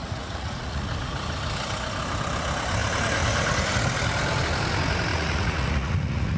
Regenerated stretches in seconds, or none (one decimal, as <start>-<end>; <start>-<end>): 0.0-0.9; 5.1-6.4